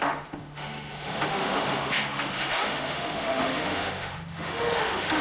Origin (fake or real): fake